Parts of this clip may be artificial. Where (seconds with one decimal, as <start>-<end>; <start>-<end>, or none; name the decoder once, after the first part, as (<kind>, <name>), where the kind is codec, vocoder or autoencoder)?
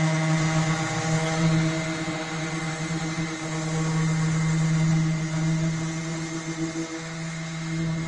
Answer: none